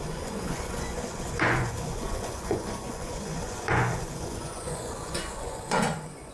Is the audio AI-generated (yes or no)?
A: yes